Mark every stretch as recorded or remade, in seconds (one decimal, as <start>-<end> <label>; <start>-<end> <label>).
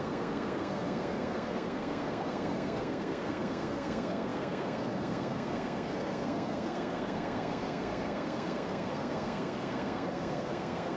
0.0-11.0 remade